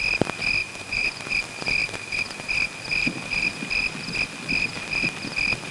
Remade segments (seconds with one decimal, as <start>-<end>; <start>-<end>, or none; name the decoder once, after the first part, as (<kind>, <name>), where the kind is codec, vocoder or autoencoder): 0.6-1.2 (vocoder, Vocos)